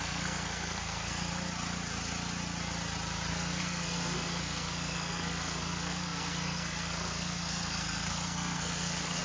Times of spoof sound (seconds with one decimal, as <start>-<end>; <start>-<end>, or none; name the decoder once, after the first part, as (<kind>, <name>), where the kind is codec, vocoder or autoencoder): 0.0-1.3 (codec, SNAC); 3.3-9.2